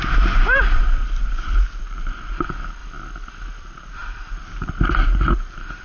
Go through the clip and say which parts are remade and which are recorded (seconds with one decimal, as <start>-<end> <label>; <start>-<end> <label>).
0.0-2.8 remade; 2.8-3.6 recorded; 3.6-5.8 remade